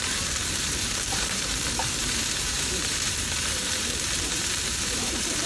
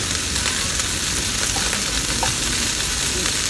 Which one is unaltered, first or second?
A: second